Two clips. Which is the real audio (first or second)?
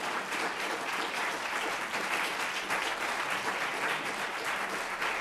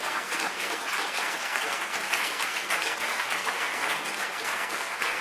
first